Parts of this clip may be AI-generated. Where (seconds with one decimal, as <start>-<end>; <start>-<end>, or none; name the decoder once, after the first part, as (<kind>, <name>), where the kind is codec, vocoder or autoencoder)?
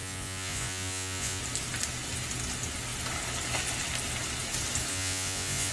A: 0.0-1.4 (vocoder, Vocos); 4.9-5.7